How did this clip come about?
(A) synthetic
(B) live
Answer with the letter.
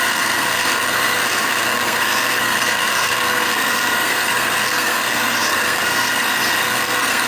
A